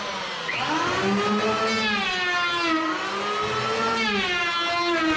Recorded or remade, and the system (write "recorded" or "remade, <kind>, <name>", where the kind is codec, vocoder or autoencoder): recorded